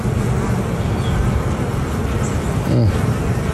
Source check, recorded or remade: recorded